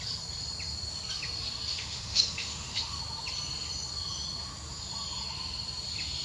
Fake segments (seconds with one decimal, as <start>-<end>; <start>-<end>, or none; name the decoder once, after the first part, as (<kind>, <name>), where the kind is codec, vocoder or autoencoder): 1.7-3.0 (autoencoder, DAC-VAE)